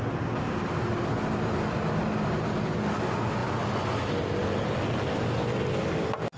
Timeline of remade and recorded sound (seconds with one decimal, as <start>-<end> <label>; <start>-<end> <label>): 0.0-6.4 recorded